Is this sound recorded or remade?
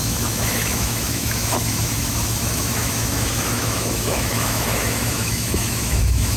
remade